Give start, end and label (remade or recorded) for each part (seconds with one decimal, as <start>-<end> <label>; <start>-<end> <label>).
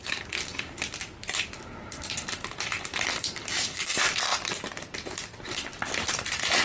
0.0-6.6 remade